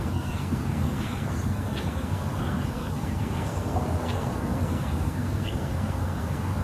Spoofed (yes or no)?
yes